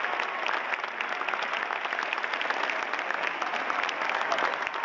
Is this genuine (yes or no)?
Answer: yes